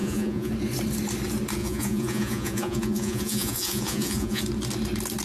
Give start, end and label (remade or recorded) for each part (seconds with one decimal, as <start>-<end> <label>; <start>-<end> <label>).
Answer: 0.0-0.5 remade; 0.5-1.6 recorded; 1.6-4.4 remade; 4.4-5.2 recorded